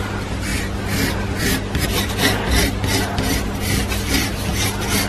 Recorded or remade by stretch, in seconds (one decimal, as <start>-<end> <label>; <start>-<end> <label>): 0.0-0.5 recorded; 0.5-2.1 remade; 2.1-5.1 recorded